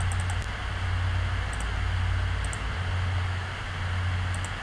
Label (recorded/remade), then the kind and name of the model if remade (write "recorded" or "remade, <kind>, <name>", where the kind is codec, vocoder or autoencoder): recorded